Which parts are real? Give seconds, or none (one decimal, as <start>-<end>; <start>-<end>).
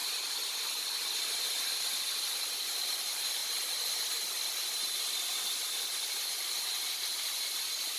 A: 0.0-8.0